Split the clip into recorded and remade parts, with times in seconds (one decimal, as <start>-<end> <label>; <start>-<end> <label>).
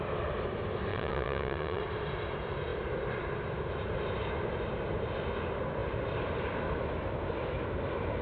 0.0-0.9 recorded; 0.9-1.8 remade; 1.8-8.2 recorded